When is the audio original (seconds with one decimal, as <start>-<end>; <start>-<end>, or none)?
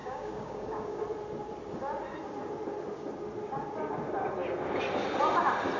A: 1.0-5.8